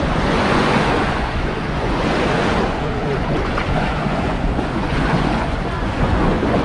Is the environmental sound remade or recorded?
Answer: remade